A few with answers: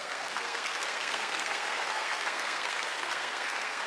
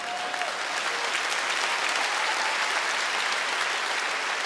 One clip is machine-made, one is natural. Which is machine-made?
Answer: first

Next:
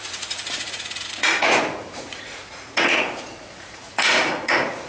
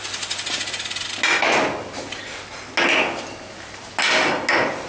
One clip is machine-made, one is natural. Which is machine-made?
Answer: first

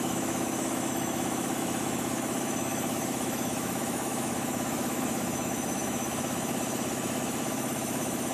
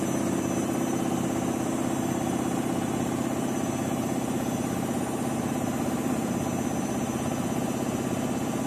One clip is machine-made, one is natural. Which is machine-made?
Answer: first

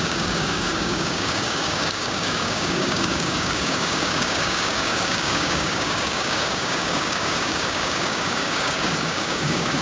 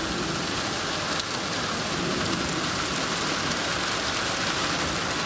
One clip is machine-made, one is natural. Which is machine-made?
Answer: first